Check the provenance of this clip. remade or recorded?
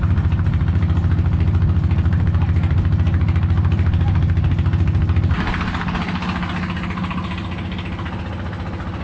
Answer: recorded